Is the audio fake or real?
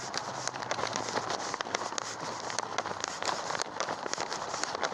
real